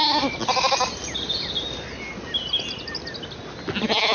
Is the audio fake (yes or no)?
no